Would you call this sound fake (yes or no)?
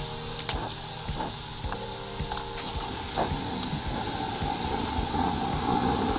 no